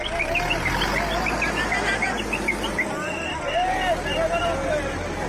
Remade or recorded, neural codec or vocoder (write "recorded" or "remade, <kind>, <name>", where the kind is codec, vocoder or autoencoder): recorded